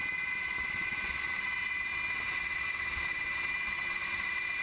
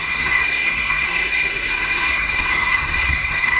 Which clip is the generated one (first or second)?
second